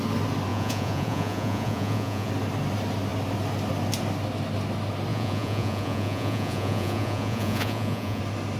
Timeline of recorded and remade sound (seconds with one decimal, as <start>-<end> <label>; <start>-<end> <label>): 0.0-0.5 recorded; 0.5-2.3 remade; 2.3-5.1 recorded; 5.1-8.2 remade; 8.2-8.6 recorded